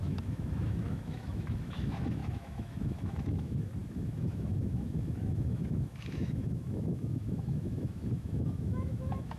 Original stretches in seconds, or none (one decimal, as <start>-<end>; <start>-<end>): none